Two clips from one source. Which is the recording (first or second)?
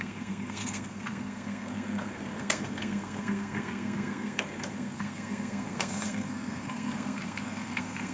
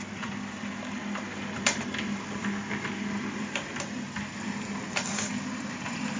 second